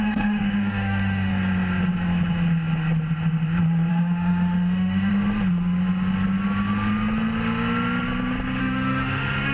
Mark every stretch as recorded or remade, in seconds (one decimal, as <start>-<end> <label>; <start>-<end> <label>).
0.0-1.3 remade; 1.3-3.9 recorded; 3.9-5.1 remade; 5.1-8.6 recorded; 8.6-9.5 remade